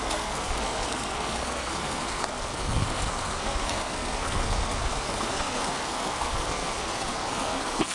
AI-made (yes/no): yes